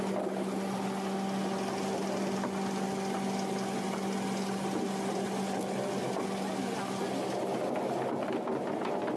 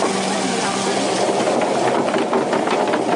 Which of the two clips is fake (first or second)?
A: second